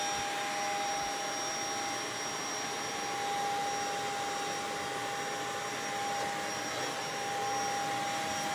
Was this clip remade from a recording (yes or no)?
no